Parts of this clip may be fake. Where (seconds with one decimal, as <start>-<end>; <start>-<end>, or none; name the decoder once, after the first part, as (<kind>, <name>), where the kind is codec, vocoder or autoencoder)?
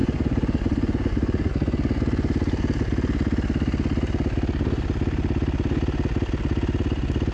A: 0.0-1.5 (vocoder, Vocos)